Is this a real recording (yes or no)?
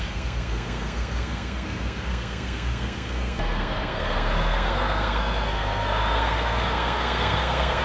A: no